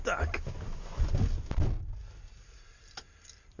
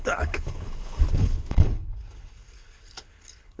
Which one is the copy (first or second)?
second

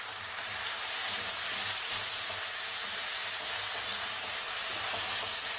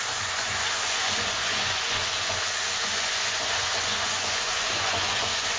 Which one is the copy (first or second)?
second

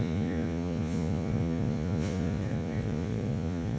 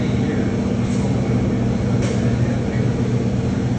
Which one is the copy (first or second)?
first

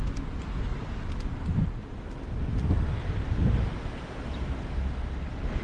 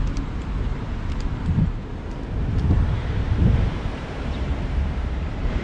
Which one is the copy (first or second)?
second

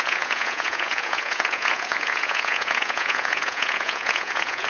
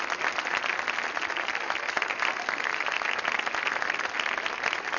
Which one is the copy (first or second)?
first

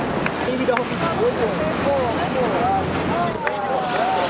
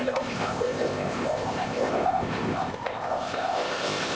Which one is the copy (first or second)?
second